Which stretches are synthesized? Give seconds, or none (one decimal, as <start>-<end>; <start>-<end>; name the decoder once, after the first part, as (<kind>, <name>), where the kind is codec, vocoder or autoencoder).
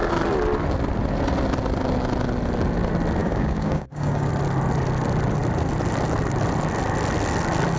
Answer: 3.2-4.3 (codec, DAC)